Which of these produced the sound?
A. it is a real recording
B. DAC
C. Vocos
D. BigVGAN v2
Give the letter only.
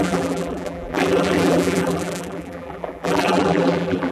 D